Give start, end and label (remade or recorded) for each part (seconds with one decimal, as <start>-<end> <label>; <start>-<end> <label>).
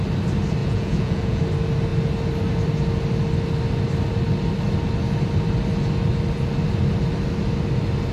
0.0-0.6 recorded; 0.6-1.4 remade; 1.4-8.1 recorded